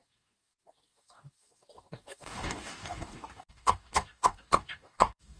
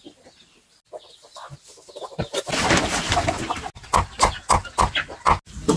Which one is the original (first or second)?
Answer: second